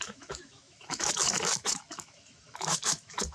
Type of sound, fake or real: fake